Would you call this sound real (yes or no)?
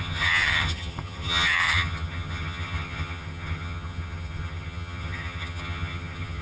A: no